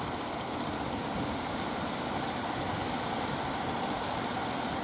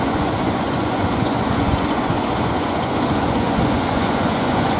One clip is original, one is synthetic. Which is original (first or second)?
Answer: first